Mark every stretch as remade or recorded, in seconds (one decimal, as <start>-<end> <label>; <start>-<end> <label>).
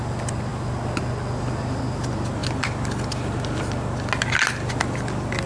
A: 0.0-5.5 recorded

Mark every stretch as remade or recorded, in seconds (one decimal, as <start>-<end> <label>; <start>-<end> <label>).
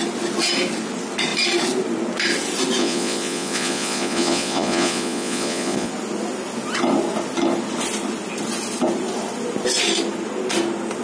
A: 0.0-2.8 recorded; 2.8-5.9 remade; 5.9-11.0 recorded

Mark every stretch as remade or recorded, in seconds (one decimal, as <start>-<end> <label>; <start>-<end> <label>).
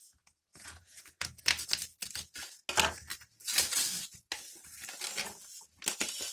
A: 0.0-0.5 recorded; 0.5-1.4 remade; 1.4-6.3 recorded